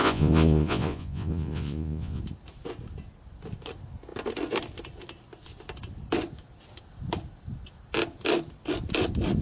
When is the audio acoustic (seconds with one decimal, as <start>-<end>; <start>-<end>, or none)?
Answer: 2.2-9.4